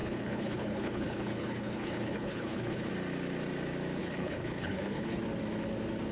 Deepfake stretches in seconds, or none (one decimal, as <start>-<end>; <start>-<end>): 0.0-2.9; 4.0-5.2